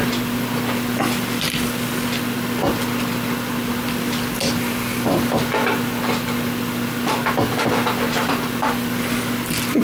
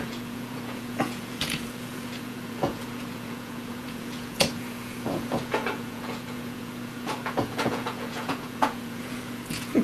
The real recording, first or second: first